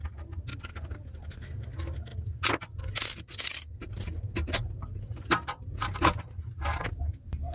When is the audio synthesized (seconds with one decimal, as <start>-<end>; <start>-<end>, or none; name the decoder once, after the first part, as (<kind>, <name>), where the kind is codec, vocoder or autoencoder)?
3.8-6.0 (vocoder, BigVGAN v2)